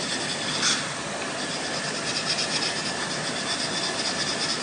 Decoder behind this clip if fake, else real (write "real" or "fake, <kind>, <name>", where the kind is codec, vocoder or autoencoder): real